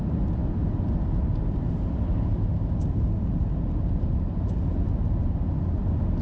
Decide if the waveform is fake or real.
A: real